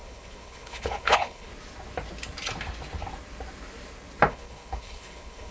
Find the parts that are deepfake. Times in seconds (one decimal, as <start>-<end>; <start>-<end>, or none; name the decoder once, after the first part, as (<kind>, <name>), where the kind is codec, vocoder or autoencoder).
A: 0.0-1.5 (codec, HILCodec); 4.3-5.5